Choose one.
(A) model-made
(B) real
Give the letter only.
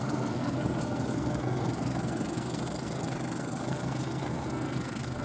A